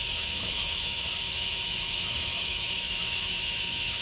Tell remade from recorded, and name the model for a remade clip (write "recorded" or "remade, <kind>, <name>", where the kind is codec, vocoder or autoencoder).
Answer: remade, autoencoder, DAC-VAE